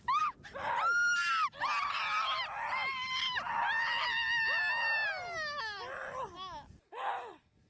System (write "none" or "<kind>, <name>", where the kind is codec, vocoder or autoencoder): none